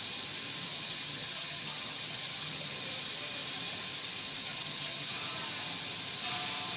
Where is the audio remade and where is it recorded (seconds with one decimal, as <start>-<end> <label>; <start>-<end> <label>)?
0.0-0.7 recorded; 0.7-2.8 remade; 2.8-4.4 recorded; 4.4-5.1 remade; 5.1-6.8 recorded